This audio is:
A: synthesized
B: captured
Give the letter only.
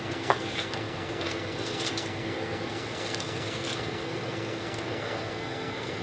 A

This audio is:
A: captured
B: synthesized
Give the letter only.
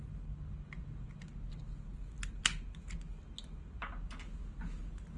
A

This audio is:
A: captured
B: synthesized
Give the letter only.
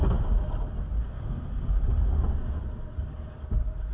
A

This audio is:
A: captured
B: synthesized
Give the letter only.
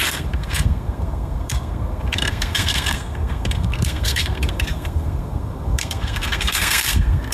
B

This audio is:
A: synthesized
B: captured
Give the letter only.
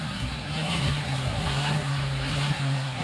A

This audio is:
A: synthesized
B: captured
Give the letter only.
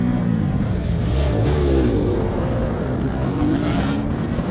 A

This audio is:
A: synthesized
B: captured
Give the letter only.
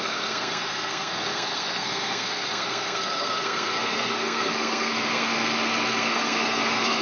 A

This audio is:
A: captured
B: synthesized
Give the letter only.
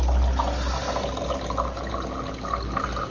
A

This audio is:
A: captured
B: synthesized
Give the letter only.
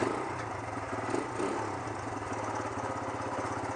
A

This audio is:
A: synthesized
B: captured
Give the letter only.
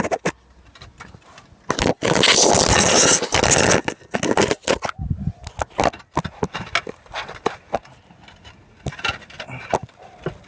B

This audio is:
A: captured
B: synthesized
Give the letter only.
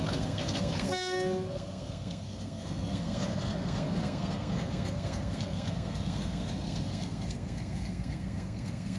B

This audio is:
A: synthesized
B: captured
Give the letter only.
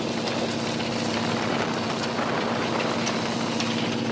B